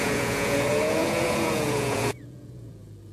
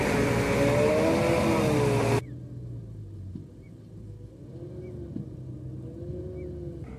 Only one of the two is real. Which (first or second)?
second